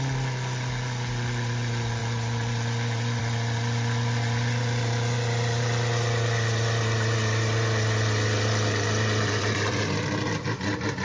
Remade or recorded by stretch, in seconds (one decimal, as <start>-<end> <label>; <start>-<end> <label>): 0.0-11.0 recorded